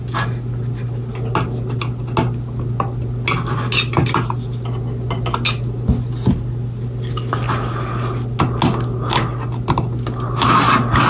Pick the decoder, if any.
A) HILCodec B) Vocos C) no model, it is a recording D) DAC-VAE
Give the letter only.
C